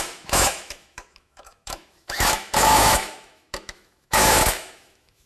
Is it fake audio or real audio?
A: fake